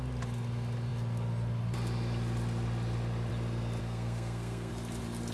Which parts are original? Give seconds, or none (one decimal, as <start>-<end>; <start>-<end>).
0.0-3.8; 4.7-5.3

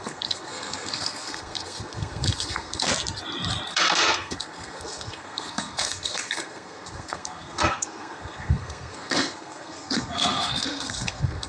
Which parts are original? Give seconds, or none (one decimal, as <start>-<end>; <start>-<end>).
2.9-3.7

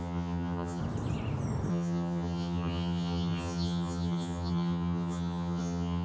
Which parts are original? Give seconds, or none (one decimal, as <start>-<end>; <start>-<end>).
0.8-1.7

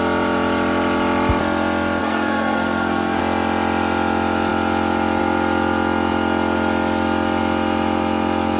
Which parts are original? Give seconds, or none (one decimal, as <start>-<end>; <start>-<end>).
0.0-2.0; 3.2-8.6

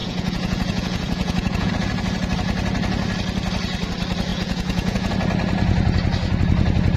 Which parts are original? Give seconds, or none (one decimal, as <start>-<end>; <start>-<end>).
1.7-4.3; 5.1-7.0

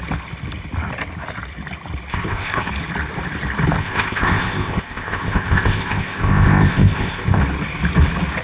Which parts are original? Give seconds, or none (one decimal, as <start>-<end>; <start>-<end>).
0.0-2.1; 2.7-3.8; 7.4-8.4

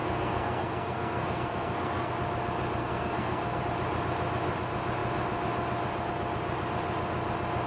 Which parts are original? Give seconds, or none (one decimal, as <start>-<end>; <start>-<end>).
2.1-2.8; 3.6-7.7